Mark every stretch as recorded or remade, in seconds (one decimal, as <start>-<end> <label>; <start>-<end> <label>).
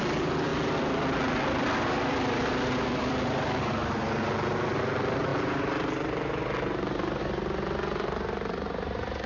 0.0-0.5 recorded; 0.5-3.9 remade; 3.9-9.3 recorded